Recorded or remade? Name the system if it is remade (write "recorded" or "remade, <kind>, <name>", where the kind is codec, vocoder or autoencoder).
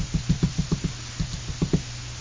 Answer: recorded